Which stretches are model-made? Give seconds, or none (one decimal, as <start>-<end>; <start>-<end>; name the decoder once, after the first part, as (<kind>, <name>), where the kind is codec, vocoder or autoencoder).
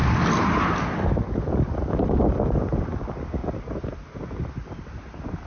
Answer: none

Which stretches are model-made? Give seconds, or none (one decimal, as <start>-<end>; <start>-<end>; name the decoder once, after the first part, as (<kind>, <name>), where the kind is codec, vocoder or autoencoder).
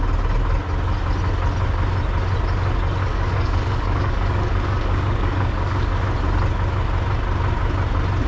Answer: 3.0-6.0 (codec, DAC)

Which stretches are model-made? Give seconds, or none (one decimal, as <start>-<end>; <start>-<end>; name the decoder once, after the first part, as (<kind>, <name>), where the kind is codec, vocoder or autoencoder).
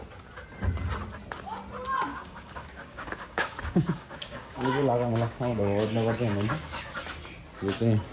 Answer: 2.1-7.0 (codec, DAC)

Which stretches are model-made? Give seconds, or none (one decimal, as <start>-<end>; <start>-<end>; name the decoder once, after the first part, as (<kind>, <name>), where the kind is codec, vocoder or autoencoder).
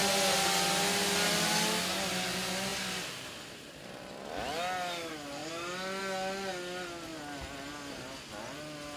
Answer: none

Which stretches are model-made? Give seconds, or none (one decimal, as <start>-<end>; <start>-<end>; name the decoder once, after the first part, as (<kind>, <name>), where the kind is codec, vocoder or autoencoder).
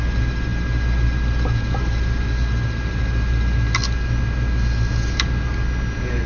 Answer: none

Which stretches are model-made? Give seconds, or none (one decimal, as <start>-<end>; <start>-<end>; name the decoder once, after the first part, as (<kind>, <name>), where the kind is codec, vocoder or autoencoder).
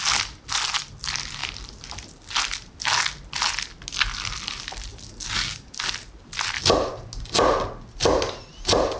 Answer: 4.9-5.7 (codec, DAC)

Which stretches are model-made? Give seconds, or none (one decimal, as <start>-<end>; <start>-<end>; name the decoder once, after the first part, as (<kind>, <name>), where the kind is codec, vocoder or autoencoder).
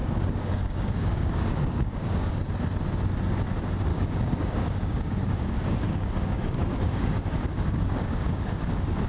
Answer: 0.0-2.3 (codec, DAC); 3.9-8.6